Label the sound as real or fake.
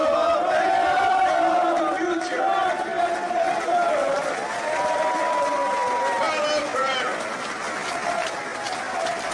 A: real